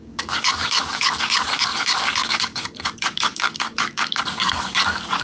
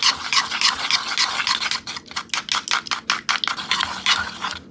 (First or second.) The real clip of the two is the second